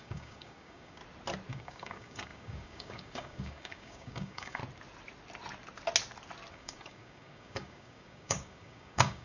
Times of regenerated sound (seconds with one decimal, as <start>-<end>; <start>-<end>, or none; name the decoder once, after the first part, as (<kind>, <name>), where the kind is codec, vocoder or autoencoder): 0.0-1.0 (codec, DAC); 1.5-4.6; 6.5-9.2